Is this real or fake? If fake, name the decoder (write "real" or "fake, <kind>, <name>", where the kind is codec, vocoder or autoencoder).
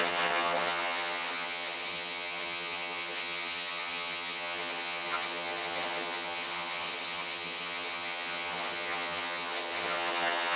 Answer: fake, vocoder, HiFi-GAN